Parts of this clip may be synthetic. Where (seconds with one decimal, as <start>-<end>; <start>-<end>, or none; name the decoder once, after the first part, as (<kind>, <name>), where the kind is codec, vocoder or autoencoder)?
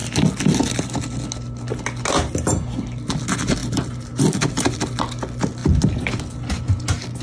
3.6-4.8 (vocoder, BigVGAN v2)